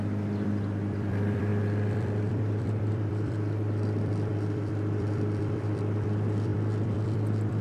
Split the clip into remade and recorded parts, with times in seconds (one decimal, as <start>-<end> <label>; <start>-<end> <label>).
0.0-7.6 remade